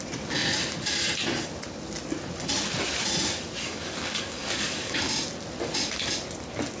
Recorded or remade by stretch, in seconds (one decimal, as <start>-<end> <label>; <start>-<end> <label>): 0.0-3.6 recorded; 3.6-5.0 remade; 5.0-6.8 recorded